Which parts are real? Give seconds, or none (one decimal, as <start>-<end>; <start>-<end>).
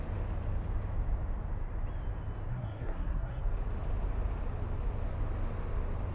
0.0-2.5; 3.4-6.1